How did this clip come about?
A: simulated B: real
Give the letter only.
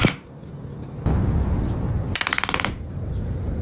B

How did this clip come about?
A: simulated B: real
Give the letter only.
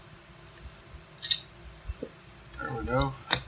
B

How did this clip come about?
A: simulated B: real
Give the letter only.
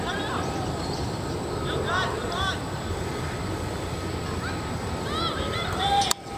A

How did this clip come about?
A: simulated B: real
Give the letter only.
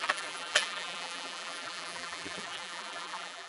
A